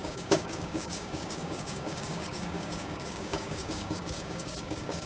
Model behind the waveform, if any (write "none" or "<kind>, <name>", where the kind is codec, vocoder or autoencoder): codec, DAC